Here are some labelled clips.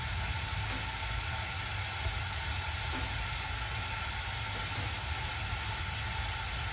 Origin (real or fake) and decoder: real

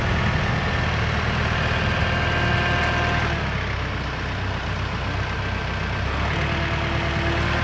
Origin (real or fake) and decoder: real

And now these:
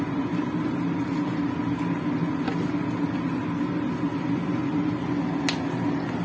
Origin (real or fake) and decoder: real